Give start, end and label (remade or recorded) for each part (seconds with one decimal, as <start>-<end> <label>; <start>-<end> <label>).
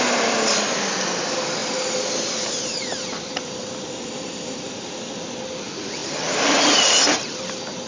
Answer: 0.0-1.6 recorded; 1.6-5.1 remade; 5.1-7.9 recorded